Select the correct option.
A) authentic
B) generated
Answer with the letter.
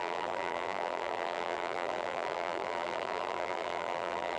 B